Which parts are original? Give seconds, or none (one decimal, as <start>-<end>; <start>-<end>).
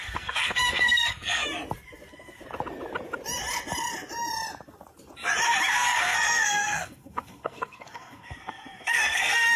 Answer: 1.4-5.7